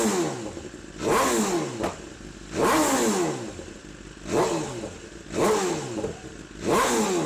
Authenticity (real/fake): real